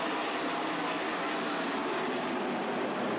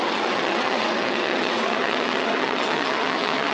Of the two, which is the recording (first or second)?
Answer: first